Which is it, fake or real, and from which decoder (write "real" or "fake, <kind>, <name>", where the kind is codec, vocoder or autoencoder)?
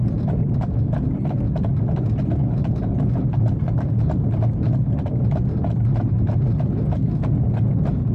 real